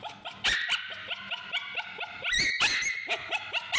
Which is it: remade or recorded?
recorded